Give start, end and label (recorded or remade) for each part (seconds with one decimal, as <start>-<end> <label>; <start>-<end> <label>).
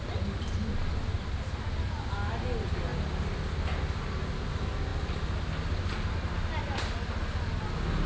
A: 0.0-8.1 recorded